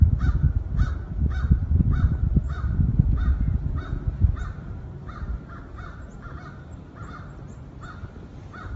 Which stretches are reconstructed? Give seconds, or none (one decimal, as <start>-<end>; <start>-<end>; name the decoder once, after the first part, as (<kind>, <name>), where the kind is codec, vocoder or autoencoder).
2.3-7.1 (vocoder, BigVGAN v2)